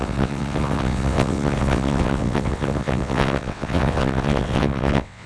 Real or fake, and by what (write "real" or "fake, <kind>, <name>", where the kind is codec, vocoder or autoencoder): fake, vocoder, WaveNeXt